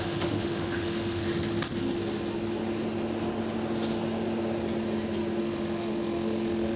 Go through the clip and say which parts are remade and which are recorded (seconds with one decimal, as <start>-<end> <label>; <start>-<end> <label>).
0.0-1.3 remade; 1.3-5.4 recorded; 5.4-6.8 remade